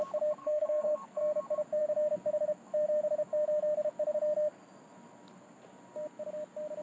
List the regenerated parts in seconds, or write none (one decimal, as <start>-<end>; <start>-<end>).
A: 0.4-1.2